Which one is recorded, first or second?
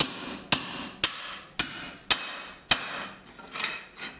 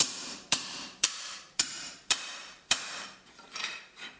first